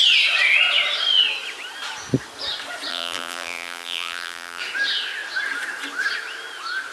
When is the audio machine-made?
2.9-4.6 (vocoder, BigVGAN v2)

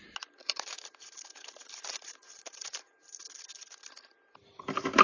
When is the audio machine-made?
0.4-3.2 (vocoder, BigVGAN v2)

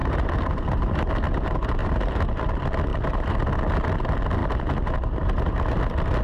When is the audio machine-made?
0.0-1.1 (vocoder, BigVGAN v2); 1.8-2.5; 2.9-3.4; 4.4-5.8